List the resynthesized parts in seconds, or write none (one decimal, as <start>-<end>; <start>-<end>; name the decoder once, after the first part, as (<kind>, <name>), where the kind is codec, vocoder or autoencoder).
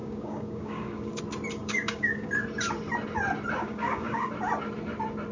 0.0-1.2 (codec, DAC); 1.6-2.3; 3.6-4.3